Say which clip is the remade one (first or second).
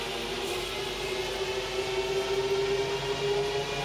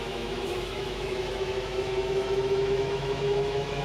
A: second